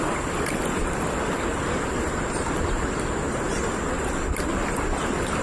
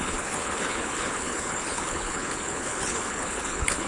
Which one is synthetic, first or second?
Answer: second